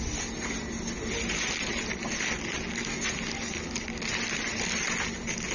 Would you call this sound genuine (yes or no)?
yes